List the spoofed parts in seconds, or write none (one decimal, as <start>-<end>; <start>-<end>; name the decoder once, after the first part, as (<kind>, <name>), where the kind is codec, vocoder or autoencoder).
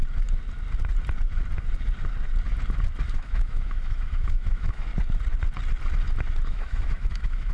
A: 3.1-4.9 (autoencoder, DAC-VAE); 6.5-7.5